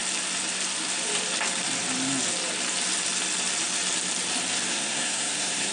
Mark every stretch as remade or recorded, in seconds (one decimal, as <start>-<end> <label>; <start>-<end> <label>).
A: 0.0-4.7 recorded; 4.7-5.7 remade